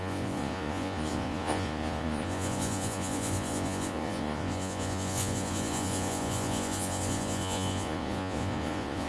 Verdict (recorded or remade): remade